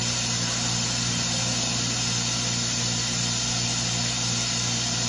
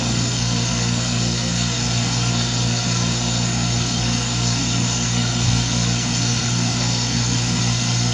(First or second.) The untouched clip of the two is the first